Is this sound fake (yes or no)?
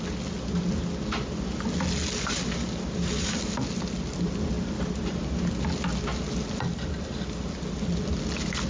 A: no